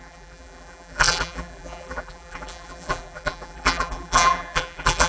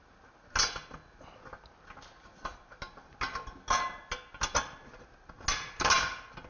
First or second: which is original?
second